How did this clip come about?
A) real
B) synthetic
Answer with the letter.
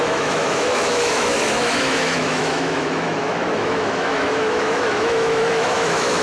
B